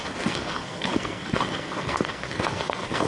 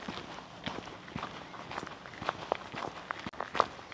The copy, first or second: first